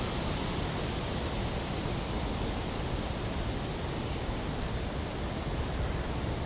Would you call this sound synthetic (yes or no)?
no